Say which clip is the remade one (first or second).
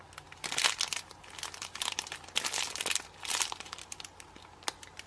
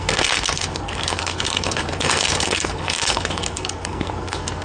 second